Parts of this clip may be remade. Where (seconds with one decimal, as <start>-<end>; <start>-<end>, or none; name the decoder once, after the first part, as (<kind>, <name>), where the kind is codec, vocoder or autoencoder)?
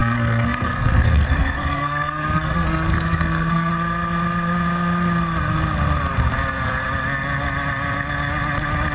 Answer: 0.0-3.7 (codec, SNAC)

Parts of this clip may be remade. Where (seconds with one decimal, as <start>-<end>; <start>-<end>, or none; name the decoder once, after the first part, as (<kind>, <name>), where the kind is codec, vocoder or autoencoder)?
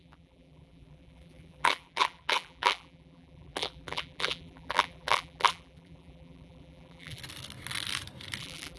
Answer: 0.0-7.2 (vocoder, BigVGAN v2); 8.4-8.8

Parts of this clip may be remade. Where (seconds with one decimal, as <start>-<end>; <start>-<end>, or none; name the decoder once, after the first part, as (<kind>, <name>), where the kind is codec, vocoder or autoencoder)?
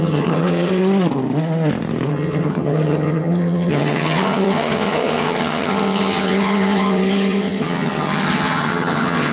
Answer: 0.0-0.8 (vocoder, HiFi-GAN); 2.1-9.3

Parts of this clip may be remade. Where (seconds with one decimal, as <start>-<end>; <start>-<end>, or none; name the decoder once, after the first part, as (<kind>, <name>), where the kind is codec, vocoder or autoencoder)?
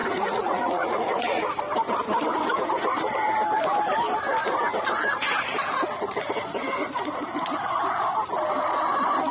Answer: 0.0-1.4 (vocoder, Vocos)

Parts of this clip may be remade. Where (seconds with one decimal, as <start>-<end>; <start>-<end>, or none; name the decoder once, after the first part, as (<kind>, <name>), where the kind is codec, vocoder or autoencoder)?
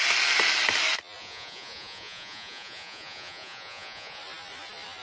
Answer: 1.2-4.2 (vocoder, Vocos)